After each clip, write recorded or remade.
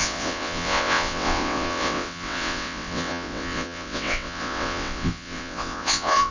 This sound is remade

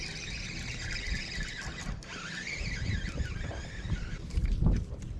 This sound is remade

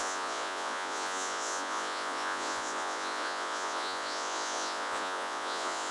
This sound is remade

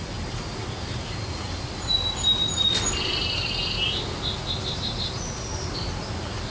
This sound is recorded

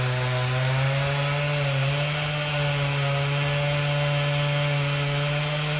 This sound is recorded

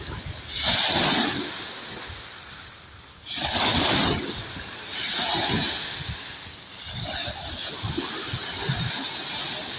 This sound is recorded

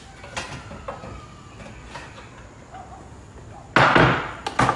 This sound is recorded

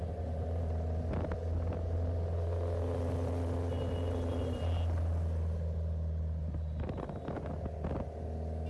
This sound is recorded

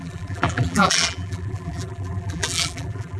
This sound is remade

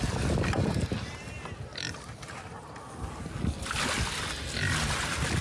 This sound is recorded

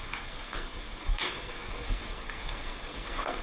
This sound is remade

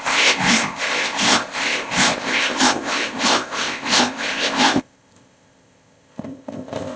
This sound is remade